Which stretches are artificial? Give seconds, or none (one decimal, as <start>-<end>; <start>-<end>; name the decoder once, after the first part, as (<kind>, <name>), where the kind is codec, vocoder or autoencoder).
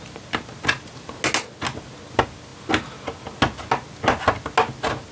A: none